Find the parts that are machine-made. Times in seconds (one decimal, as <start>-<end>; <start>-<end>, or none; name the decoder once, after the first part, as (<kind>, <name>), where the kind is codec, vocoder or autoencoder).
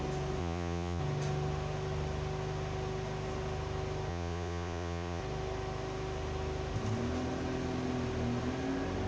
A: 0.4-1.0 (vocoder, Vocos); 4.1-5.2